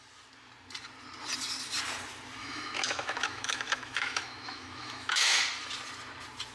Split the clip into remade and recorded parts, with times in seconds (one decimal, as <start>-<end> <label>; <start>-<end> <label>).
0.0-2.4 recorded; 2.4-5.4 remade; 5.4-6.5 recorded

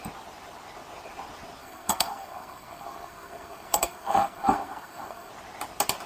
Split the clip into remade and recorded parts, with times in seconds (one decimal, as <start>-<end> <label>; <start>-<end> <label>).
0.0-1.6 recorded; 1.6-5.3 remade; 5.3-6.1 recorded

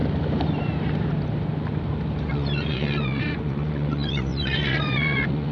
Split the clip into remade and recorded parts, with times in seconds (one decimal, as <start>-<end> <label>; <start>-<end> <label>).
0.0-2.3 recorded; 2.3-5.5 remade

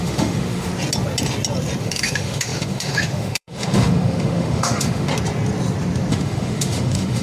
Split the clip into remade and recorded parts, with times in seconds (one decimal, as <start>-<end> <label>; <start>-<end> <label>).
0.0-0.7 remade; 0.7-1.8 recorded; 1.8-5.1 remade; 5.1-6.1 recorded; 6.1-7.2 remade

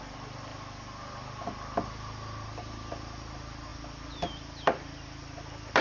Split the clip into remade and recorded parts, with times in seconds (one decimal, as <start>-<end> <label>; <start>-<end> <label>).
0.0-5.8 recorded

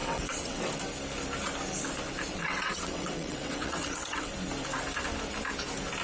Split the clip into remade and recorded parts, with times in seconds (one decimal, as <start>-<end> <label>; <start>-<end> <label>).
0.0-0.7 remade; 0.7-2.3 recorded; 2.3-4.3 remade; 4.3-6.0 recorded

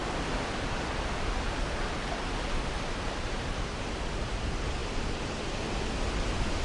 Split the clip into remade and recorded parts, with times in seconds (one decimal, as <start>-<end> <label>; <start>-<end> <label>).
0.0-6.6 recorded

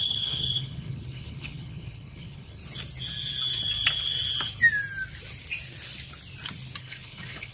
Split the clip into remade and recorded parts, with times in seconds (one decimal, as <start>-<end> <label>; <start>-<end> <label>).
0.0-2.6 remade; 2.6-6.8 recorded; 6.8-7.5 remade